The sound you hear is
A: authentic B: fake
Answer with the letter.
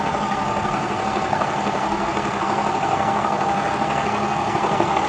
B